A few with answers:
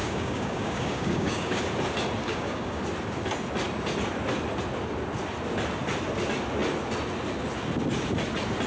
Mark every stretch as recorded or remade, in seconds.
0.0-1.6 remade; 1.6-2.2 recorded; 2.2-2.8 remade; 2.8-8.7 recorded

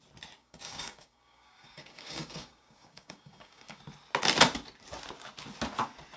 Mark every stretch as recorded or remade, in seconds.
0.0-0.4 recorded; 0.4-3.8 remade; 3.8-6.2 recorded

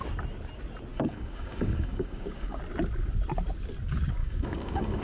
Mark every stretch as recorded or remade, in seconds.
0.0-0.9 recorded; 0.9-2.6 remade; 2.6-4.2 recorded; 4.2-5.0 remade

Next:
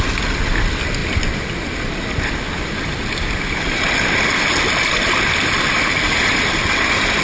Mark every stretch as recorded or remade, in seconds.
0.0-7.2 recorded

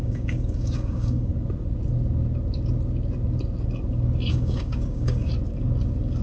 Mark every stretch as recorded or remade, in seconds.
0.0-1.3 remade; 1.3-4.3 recorded; 4.3-5.3 remade; 5.3-6.2 recorded